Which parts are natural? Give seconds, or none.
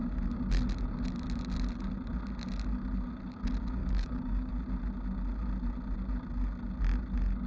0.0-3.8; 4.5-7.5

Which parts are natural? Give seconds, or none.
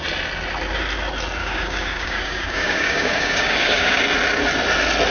0.0-1.4; 4.0-5.1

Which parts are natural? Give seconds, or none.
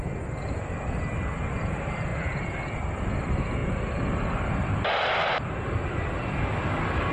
0.0-7.1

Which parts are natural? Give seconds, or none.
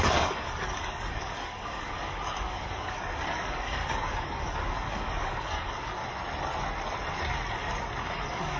6.0-8.0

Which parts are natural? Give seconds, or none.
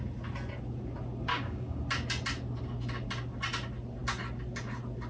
0.0-1.3; 1.8-5.1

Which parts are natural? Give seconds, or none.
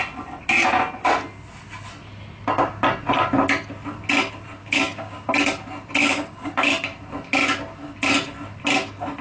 0.0-4.6; 5.3-6.0; 6.6-9.2